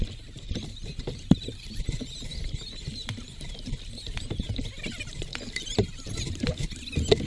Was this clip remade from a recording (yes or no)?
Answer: no